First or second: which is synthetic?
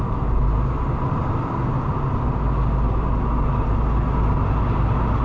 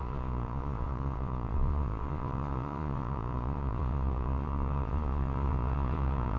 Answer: second